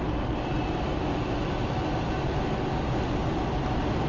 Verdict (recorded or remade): recorded